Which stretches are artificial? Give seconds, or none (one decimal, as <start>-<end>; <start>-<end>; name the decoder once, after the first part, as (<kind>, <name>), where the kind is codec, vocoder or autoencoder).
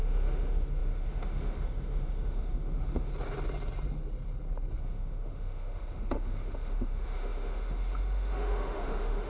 0.0-3.1 (autoencoder, DAC-VAE); 4.8-9.3